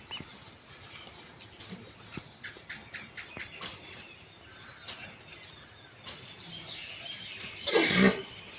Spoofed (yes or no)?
no